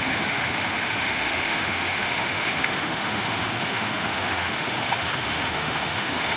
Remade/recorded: remade